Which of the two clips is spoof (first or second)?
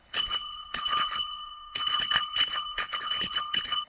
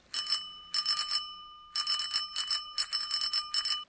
first